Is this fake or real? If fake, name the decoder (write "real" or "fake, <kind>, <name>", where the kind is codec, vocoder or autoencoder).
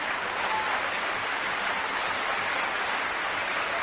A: real